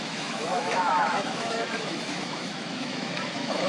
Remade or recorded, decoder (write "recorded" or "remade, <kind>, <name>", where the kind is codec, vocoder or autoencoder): remade, autoencoder, DAC-VAE